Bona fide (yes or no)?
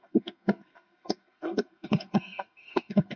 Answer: no